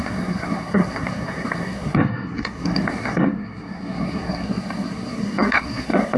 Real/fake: fake